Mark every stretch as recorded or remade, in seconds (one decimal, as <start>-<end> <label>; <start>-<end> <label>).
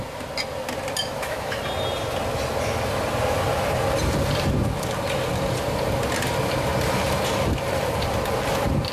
0.0-1.0 recorded; 1.0-1.6 remade; 1.6-8.9 recorded